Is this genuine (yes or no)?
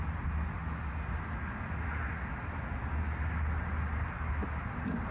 yes